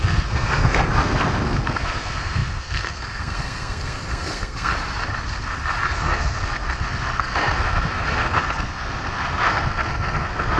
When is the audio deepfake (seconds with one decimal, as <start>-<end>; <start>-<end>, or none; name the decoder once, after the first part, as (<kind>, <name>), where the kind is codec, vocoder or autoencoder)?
0.0-4.7 (codec, SNAC); 5.8-10.6

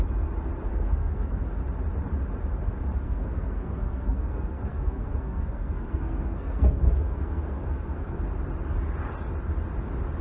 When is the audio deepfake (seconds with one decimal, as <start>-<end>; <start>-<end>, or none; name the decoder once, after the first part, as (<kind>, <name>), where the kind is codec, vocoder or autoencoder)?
0.7-1.4 (codec, SNAC); 3.0-8.2

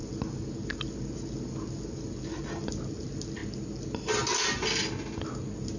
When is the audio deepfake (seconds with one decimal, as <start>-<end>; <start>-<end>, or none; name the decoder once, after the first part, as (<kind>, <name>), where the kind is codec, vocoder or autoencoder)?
none

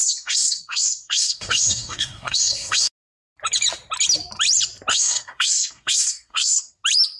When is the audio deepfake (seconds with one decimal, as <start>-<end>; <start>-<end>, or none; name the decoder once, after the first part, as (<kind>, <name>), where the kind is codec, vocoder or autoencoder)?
0.0-2.9 (codec, SNAC); 4.9-6.6

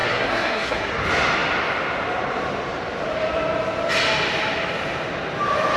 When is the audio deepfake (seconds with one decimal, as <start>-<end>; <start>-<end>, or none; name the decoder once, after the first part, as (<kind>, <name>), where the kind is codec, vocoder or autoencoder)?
0.0-0.9 (codec, SNAC)

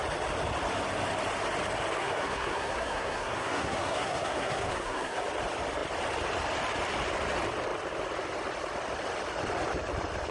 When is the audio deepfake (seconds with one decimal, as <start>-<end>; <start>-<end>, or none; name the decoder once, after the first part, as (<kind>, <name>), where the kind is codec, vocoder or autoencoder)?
2.0-5.2 (codec, SNAC)

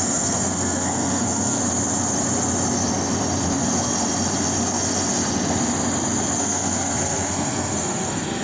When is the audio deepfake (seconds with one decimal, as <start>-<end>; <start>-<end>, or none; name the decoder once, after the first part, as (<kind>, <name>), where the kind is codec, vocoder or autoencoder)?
0.0-1.6 (codec, SNAC); 6.4-8.4